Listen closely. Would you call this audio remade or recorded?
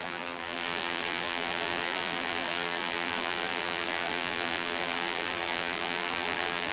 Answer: remade